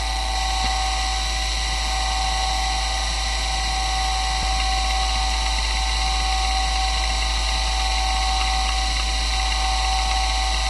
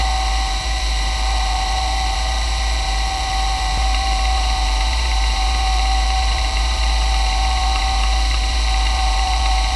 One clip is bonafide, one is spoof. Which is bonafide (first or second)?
first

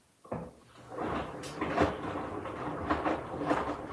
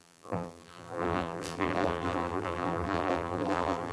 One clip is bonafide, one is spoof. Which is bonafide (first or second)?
first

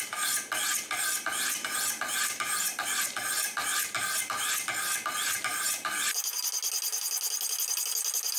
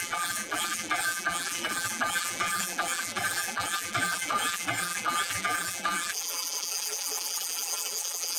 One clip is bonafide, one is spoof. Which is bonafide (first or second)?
first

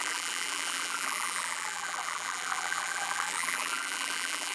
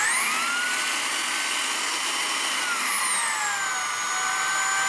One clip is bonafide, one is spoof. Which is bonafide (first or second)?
second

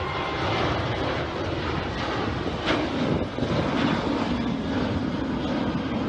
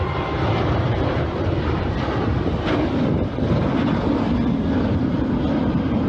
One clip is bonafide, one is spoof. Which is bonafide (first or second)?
first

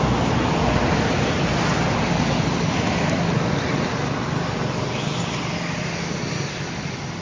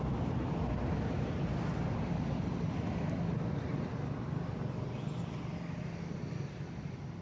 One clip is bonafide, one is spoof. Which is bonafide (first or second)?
first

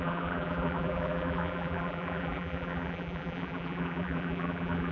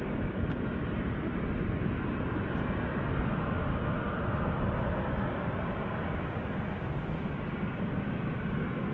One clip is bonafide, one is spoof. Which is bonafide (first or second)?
second